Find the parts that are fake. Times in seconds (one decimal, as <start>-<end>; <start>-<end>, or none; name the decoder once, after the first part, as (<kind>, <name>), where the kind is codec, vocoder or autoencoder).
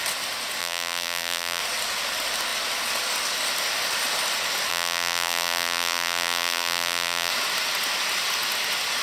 0.6-1.6 (vocoder, BigVGAN v2); 4.7-7.3